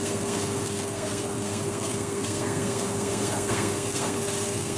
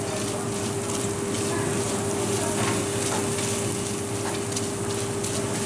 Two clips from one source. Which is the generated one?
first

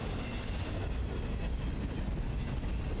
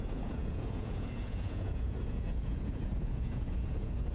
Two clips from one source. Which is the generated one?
second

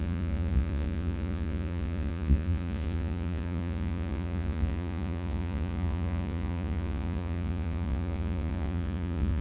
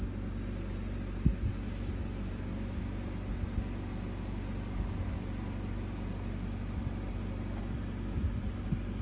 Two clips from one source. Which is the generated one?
first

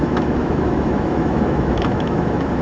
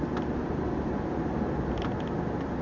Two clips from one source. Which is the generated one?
first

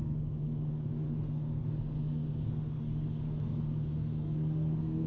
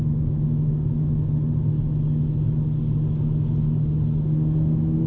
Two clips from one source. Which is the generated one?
first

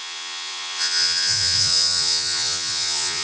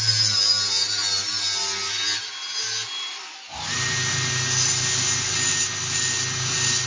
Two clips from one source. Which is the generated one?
first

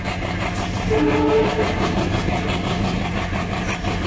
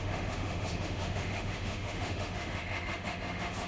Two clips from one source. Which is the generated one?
second